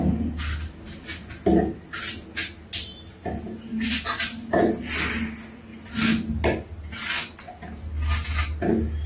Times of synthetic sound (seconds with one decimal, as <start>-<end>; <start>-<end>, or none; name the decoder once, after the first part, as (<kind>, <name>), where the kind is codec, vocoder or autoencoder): none